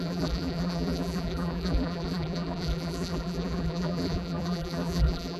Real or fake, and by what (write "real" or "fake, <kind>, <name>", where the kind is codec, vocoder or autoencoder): fake, vocoder, BigVGAN v2